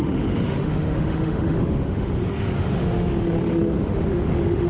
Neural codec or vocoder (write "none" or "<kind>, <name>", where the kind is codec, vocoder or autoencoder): autoencoder, DAC-VAE